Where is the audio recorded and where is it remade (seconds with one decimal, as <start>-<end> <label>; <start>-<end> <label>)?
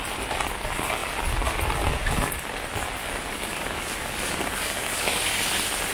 0.0-3.0 recorded; 3.0-5.4 remade; 5.4-5.9 recorded